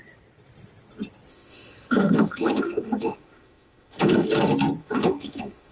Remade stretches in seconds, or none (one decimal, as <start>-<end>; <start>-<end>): 1.3-4.3; 4.8-5.7